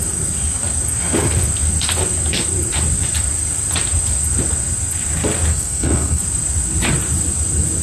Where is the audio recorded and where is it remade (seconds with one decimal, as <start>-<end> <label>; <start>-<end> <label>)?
0.0-5.5 recorded; 5.5-6.2 remade; 6.2-7.8 recorded